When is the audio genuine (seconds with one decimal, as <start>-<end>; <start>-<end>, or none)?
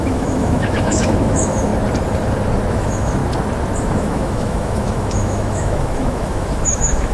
1.7-2.7; 3.2-3.9